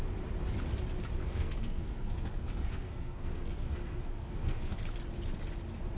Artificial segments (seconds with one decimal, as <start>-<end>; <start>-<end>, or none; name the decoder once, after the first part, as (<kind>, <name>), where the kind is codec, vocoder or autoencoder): 1.2-4.8 (codec, SNAC)